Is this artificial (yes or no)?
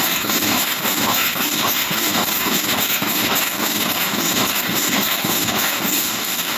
yes